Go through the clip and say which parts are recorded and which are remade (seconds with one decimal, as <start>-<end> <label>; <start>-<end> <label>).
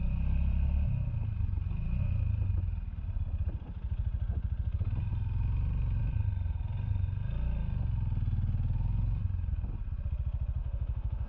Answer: 0.0-10.6 recorded; 10.6-11.3 remade